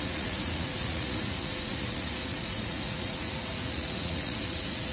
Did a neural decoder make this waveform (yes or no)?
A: yes